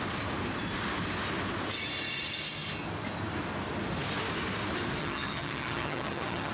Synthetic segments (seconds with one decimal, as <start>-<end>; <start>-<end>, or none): 5.0-6.5

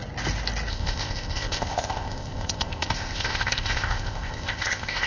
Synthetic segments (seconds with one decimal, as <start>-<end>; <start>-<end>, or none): 0.7-5.1

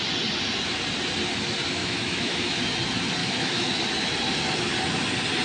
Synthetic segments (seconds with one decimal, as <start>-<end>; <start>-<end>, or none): 1.8-2.6; 3.2-3.8

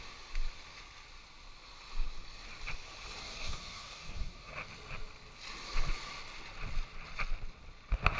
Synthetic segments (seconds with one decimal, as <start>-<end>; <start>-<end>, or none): 3.2-4.5

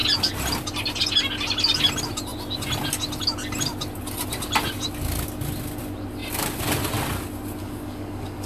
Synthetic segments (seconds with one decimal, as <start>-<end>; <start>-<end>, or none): 7.6-8.5

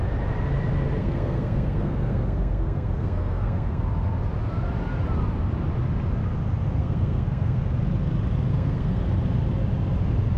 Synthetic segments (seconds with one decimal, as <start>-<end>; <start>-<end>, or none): 1.0-3.8; 6.8-7.6; 8.5-9.0

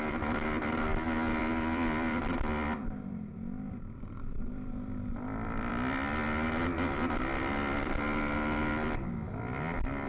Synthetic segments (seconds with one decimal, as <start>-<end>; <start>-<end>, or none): 1.4-5.7